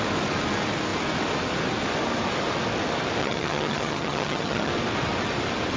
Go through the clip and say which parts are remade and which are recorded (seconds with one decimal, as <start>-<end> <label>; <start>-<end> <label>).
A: 0.0-3.2 recorded; 3.2-4.7 remade; 4.7-5.8 recorded

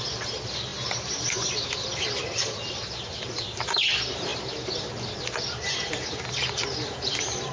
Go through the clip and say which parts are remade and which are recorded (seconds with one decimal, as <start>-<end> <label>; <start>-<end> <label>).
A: 0.0-7.5 recorded

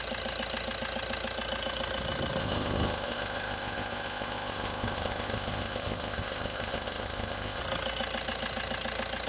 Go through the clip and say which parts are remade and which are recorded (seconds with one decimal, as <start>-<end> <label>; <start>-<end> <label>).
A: 0.0-2.4 recorded; 2.4-7.6 remade; 7.6-9.3 recorded